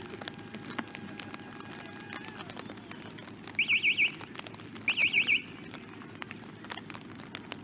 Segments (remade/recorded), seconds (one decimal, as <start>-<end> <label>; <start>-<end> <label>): 0.0-5.0 recorded; 5.0-6.6 remade; 6.6-7.6 recorded

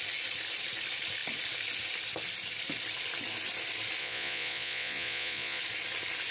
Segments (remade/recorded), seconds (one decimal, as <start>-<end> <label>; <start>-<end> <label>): 0.0-4.0 recorded; 4.0-5.6 remade; 5.6-6.3 recorded

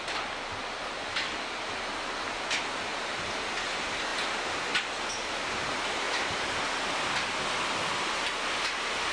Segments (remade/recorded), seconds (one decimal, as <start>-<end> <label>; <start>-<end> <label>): 0.0-9.1 recorded

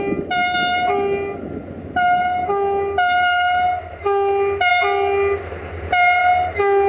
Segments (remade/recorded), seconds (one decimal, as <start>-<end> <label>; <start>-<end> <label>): 0.0-6.9 recorded

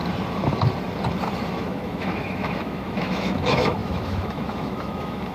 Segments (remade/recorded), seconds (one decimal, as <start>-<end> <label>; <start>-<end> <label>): 0.0-1.5 recorded; 1.5-5.3 remade

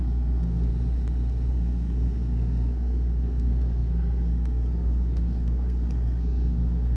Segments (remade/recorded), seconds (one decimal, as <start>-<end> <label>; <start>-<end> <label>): 0.0-0.7 remade; 0.7-1.5 recorded; 1.5-7.0 remade

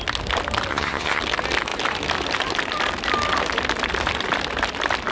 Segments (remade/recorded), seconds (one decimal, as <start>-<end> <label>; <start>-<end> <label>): 0.0-0.7 recorded; 0.7-1.2 remade; 1.2-5.1 recorded